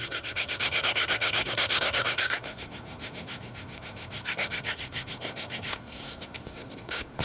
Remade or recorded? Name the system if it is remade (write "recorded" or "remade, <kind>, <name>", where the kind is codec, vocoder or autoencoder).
remade, codec, SNAC